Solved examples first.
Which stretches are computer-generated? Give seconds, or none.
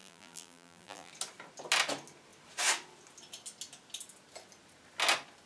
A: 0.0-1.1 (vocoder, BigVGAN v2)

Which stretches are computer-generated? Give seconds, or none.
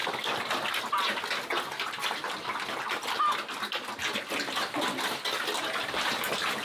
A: none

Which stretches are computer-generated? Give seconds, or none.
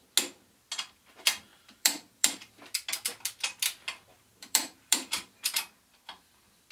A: 1.5-2.5 (vocoder, BigVGAN v2); 4.1-5.4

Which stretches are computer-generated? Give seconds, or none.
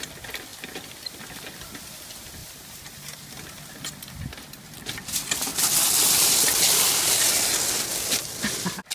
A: 2.4-3.7 (vocoder, BigVGAN v2)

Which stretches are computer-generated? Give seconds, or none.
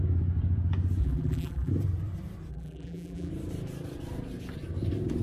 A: 1.0-1.7 (vocoder, BigVGAN v2); 2.5-3.3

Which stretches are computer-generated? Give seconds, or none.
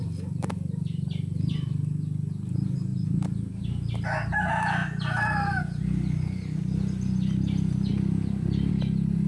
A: 2.9-3.5 (vocoder, BigVGAN v2)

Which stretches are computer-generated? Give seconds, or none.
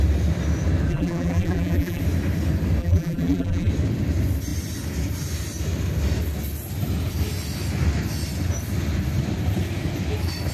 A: 0.9-2.0 (vocoder, BigVGAN v2); 2.8-3.7